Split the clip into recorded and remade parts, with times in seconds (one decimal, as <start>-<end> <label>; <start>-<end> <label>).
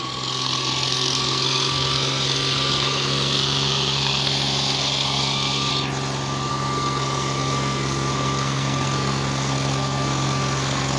0.0-5.7 remade; 5.7-6.5 recorded; 6.5-11.0 remade